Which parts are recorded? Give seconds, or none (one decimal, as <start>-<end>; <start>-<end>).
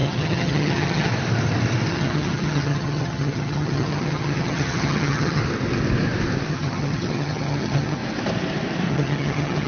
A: 1.1-1.9; 5.4-6.5; 8.0-8.9